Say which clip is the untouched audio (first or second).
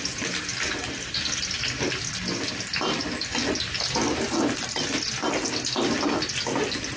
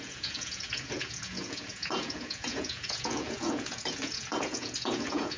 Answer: first